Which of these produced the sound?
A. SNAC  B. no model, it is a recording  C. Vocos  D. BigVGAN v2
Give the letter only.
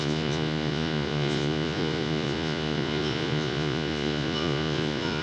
C